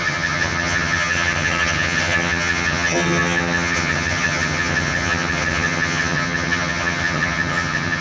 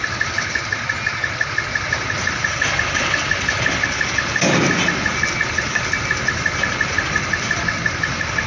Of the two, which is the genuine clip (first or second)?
second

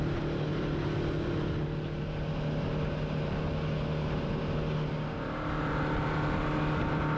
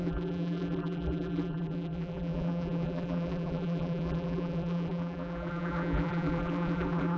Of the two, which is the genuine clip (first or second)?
first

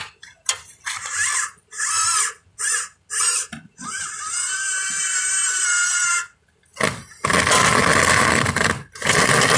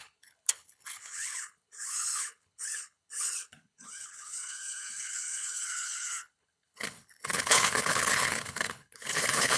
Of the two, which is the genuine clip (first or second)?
first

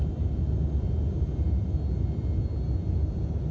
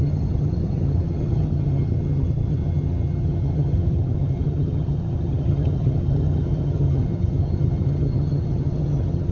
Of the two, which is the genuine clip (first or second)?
first